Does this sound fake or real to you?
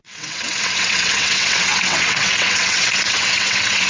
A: fake